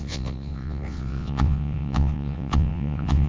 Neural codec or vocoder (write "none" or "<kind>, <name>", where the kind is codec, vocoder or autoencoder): vocoder, WaveNeXt